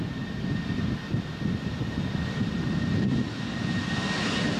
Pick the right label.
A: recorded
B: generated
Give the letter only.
A